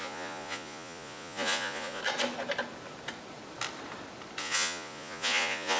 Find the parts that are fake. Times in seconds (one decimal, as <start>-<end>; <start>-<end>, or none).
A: 0.0-2.0; 4.4-5.8